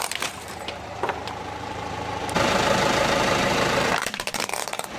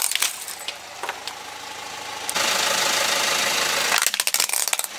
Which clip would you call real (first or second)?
second